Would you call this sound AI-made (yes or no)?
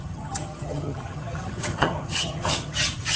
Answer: yes